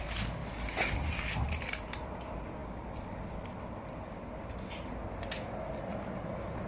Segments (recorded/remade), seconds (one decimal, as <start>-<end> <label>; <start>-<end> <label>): 0.0-6.7 recorded